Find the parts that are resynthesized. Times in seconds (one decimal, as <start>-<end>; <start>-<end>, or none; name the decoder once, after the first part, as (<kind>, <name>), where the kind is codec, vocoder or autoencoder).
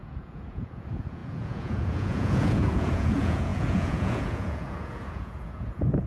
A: 0.0-6.1 (vocoder, Vocos)